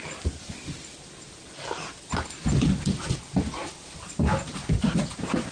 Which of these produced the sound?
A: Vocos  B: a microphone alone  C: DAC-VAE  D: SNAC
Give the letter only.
B